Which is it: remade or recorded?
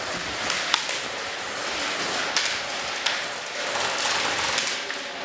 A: recorded